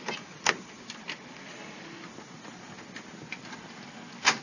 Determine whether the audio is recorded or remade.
recorded